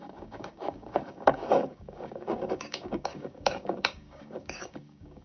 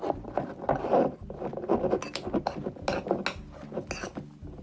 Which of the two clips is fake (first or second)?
first